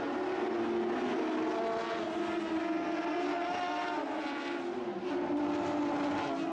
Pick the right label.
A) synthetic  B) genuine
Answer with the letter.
B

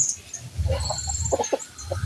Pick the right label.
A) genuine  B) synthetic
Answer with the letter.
A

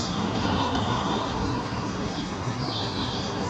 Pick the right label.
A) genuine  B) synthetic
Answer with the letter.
B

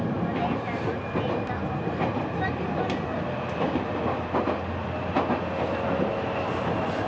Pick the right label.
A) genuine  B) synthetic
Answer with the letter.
A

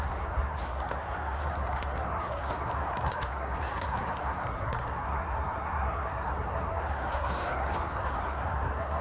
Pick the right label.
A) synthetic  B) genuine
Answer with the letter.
A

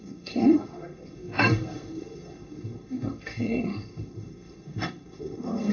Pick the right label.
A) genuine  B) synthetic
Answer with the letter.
B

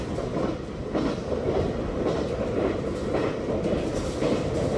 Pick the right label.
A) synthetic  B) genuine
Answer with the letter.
B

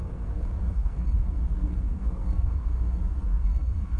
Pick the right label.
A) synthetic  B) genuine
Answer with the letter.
A